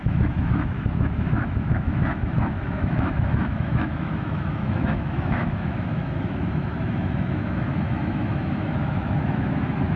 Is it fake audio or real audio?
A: fake